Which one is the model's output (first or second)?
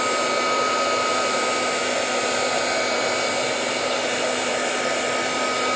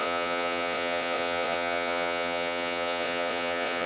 second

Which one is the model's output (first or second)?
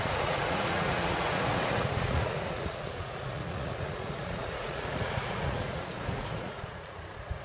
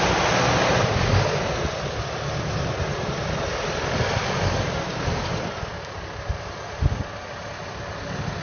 first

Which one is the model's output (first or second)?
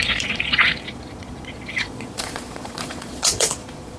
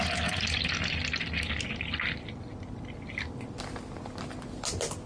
first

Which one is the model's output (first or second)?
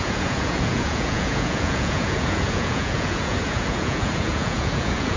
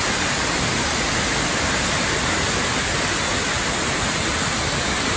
first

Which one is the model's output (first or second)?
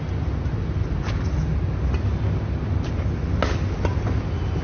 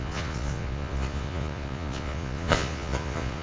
second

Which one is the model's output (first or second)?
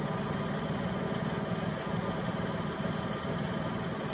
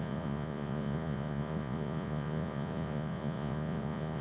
second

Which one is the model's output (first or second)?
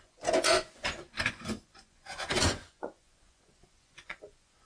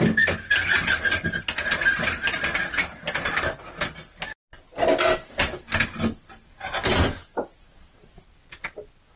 first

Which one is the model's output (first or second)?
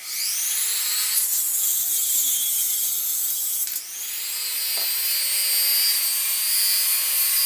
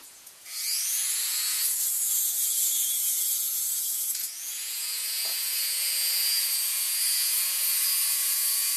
second